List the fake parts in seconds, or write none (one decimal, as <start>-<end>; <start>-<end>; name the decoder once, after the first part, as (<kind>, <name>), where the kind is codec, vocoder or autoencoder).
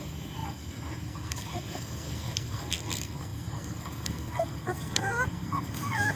0.0-6.2 (codec, SNAC)